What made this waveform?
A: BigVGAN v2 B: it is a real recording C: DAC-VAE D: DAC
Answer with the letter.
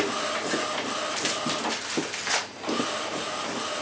B